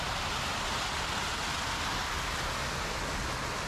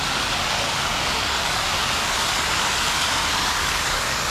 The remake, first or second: second